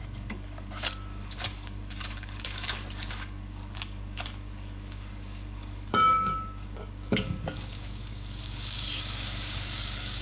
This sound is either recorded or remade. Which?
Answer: remade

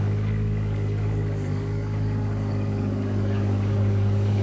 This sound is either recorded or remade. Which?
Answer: remade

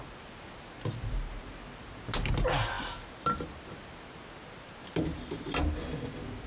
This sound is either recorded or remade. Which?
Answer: recorded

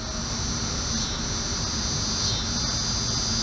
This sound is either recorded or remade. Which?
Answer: recorded